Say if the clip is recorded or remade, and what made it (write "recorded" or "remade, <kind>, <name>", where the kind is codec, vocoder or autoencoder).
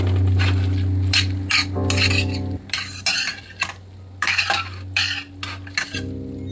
recorded